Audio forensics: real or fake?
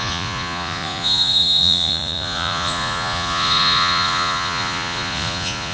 fake